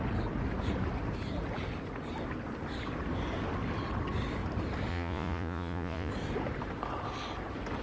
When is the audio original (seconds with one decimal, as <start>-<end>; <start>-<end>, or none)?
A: 0.0-4.9; 6.1-7.8